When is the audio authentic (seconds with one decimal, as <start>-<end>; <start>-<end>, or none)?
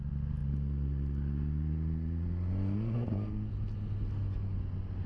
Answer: 0.0-5.1